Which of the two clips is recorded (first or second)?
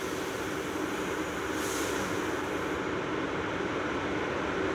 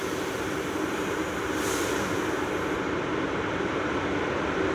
first